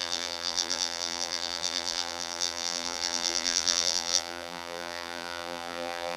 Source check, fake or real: fake